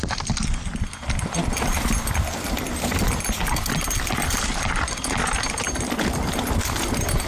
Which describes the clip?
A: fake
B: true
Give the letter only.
B